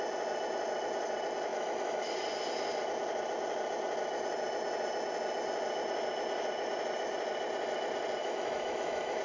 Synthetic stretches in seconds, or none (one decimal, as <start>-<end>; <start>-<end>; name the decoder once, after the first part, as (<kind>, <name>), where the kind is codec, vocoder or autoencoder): 1.5-2.1 (autoencoder, DAC-VAE); 8.2-9.2